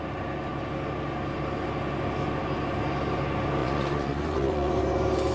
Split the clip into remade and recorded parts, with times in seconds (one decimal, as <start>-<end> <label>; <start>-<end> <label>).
0.0-3.6 recorded; 3.6-4.7 remade; 4.7-5.3 recorded